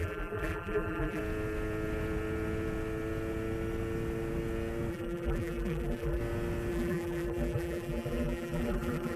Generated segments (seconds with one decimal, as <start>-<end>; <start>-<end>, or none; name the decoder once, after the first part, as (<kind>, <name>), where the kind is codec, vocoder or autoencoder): 0.0-1.2 (vocoder, BigVGAN v2); 4.9-6.2; 6.7-9.2